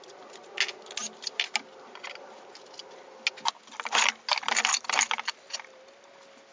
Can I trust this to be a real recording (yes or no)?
yes